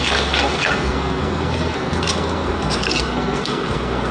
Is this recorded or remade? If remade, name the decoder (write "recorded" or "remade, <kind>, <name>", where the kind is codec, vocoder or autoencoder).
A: remade, codec, SNAC